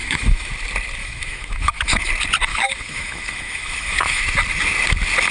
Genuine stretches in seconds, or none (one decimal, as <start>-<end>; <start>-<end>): 0.5-1.0; 2.1-2.5; 4.2-5.3

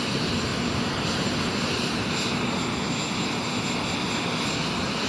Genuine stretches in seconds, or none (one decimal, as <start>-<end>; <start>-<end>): 0.0-5.1